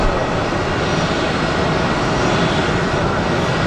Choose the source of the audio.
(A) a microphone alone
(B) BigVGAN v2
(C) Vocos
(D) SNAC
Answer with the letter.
A